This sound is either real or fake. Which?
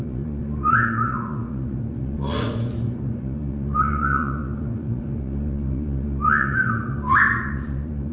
fake